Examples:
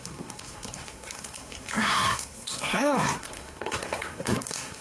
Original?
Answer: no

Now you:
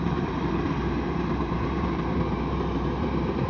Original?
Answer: no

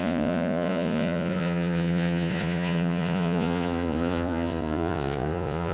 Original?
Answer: no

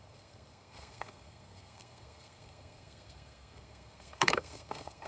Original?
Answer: no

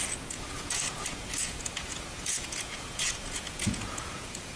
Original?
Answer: no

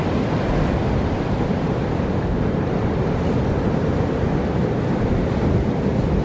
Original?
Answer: yes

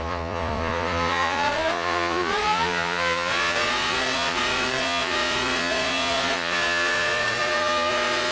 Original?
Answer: no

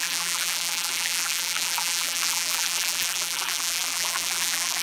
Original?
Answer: no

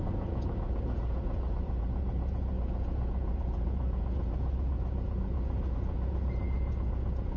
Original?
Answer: no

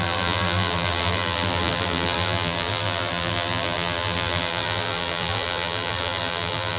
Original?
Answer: no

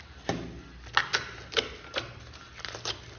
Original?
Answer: yes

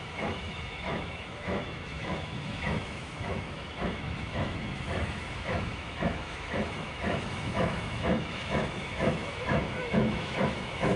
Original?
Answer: no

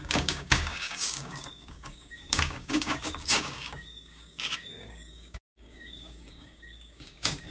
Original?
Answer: no